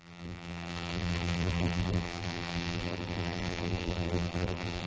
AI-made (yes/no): yes